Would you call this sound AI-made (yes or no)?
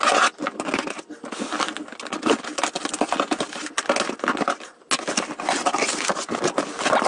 no